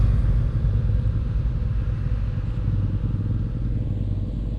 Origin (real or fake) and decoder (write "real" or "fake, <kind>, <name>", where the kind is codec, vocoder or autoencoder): real